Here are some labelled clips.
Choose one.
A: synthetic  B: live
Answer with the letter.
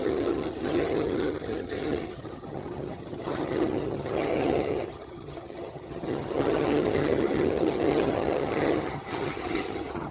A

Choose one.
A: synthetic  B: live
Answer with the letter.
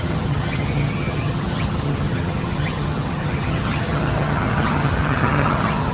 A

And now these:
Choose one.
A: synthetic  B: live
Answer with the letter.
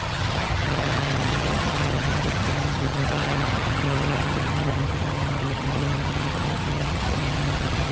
A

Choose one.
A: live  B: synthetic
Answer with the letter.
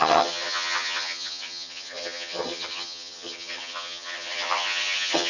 B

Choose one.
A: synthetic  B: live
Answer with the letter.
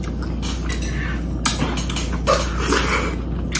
B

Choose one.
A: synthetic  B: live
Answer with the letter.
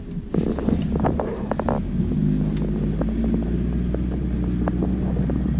B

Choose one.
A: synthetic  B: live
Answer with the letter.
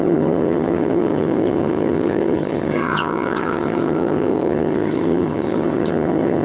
A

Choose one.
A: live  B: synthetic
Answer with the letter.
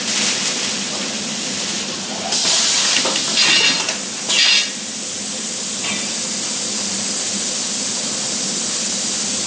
A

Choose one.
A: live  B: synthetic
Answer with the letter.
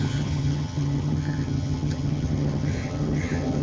B